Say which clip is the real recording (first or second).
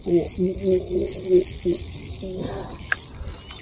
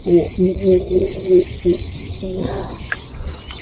first